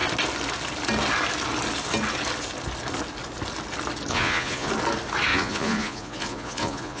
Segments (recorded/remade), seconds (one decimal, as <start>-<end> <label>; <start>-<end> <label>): 0.0-4.1 recorded; 4.1-4.7 remade; 4.7-5.3 recorded; 5.3-7.0 remade